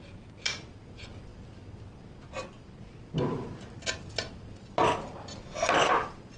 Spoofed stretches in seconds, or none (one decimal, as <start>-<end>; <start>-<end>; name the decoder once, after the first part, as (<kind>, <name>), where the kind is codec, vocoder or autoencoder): none